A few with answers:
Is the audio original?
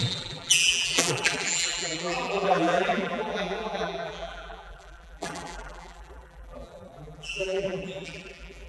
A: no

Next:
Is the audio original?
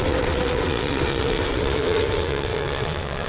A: no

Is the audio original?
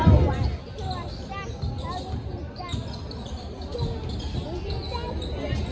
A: yes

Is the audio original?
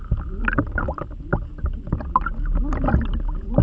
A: yes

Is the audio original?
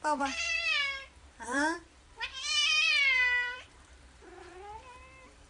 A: no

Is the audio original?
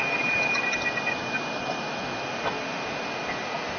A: yes